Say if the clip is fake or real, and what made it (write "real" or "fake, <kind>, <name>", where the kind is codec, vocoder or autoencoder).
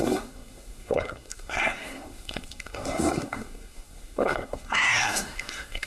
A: fake, codec, SNAC